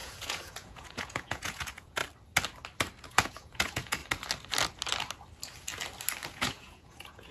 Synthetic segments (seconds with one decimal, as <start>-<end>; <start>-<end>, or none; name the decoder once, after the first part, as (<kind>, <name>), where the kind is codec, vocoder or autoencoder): 0.0-2.0 (vocoder, Vocos); 3.0-4.0; 6.3-7.3